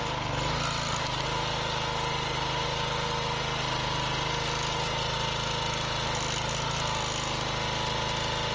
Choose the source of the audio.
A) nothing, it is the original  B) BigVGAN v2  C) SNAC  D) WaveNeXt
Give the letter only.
A